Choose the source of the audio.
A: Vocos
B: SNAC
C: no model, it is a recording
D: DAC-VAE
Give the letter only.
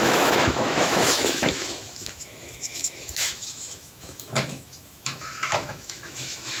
D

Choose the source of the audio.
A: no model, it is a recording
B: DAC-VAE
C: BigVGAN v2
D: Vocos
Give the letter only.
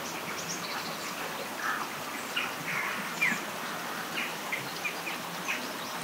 A